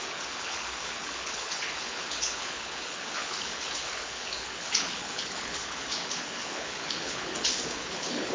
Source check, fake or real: fake